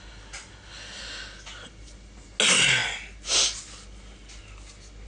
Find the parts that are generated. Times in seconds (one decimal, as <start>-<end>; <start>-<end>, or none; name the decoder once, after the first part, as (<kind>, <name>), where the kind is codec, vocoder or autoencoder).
none